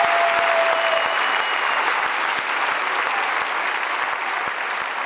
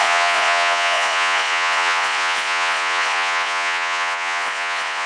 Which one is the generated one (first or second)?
second